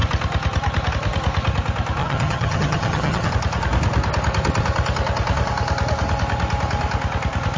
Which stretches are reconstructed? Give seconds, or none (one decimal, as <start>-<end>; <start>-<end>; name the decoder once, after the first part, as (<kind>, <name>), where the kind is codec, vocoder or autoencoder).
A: 2.0-3.3 (vocoder, HiFi-GAN)